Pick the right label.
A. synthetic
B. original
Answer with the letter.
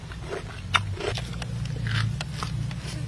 B